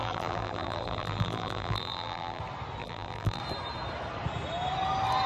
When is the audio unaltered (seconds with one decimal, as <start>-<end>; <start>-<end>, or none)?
2.4-2.8; 3.4-5.3

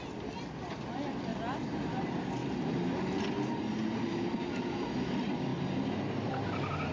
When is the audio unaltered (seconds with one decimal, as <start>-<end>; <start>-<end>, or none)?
0.0-6.9

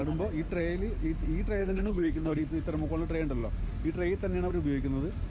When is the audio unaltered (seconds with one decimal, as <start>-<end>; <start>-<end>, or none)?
0.0-1.6; 2.4-5.3

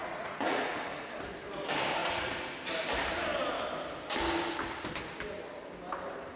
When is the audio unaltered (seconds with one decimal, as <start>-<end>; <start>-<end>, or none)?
0.8-2.0; 2.5-6.4

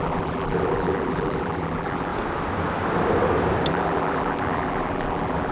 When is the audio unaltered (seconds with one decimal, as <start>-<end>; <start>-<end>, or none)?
2.1-3.7

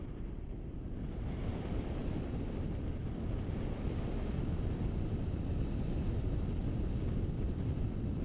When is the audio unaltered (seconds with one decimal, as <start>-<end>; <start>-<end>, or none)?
0.0-8.2